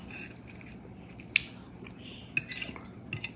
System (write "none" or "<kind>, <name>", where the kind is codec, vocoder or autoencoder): none